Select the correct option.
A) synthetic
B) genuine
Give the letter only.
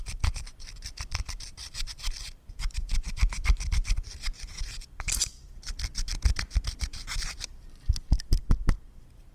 A